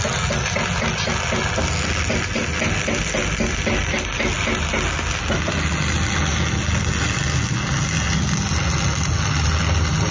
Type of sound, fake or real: real